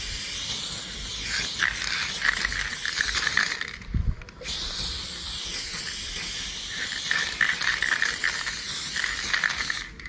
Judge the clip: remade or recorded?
recorded